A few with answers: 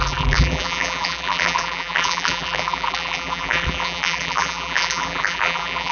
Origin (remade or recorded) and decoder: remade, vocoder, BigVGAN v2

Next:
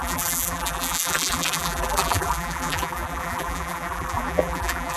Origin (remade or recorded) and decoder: remade, vocoder, BigVGAN v2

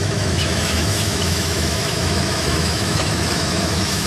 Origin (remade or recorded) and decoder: remade, autoencoder, DAC-VAE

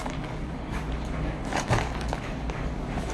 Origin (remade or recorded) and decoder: remade, codec, DAC